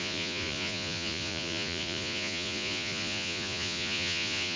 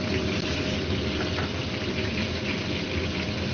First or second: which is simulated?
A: first